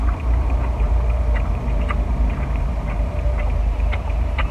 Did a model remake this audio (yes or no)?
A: yes